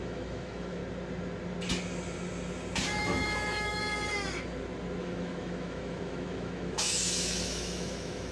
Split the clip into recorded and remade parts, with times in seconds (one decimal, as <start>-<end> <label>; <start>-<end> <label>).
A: 0.0-0.8 remade; 0.8-3.0 recorded; 3.0-3.8 remade; 3.8-5.0 recorded; 5.0-8.3 remade